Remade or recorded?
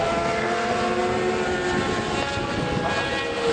recorded